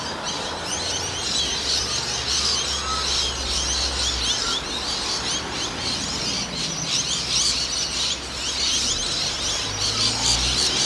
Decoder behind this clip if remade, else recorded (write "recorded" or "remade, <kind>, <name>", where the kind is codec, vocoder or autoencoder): recorded